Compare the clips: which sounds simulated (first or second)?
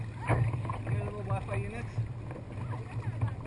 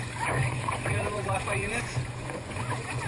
second